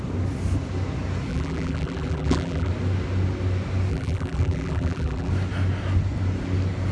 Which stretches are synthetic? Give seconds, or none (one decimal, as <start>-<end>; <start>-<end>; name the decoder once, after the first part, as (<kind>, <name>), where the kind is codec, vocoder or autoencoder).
1.3-2.7 (vocoder, BigVGAN v2); 3.9-5.3